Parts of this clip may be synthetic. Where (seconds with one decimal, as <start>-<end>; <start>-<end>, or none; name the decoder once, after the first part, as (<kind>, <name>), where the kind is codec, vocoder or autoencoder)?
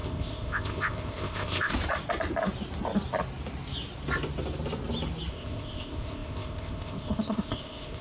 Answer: 0.0-1.7 (codec, ZipCodec); 5.3-8.0